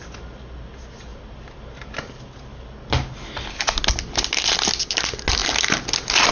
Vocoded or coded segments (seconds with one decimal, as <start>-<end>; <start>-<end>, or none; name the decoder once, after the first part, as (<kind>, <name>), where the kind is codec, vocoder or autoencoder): none